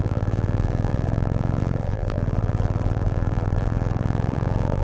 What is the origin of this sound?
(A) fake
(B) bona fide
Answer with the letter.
A